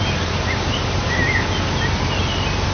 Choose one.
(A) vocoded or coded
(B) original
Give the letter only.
B